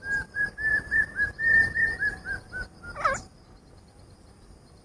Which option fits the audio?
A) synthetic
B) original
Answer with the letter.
B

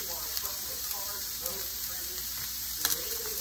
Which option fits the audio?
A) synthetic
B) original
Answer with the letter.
A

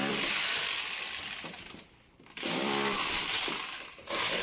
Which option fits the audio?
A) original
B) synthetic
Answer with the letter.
B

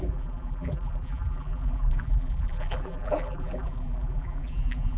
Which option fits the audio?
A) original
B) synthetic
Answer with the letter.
B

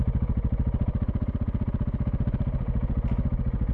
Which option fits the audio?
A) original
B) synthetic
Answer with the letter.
A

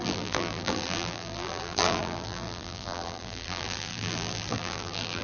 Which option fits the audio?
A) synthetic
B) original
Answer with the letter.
A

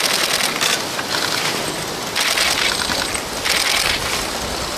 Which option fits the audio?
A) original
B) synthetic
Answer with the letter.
A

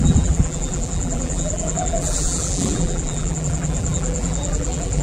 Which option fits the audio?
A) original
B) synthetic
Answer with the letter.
B